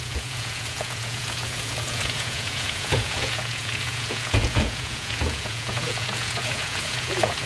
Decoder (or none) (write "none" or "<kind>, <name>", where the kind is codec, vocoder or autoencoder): vocoder, Vocos